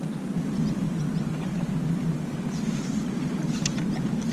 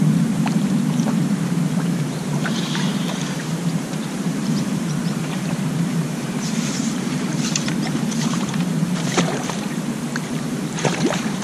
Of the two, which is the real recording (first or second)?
first